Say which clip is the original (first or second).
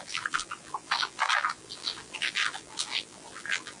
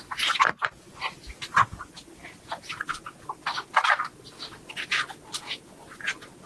second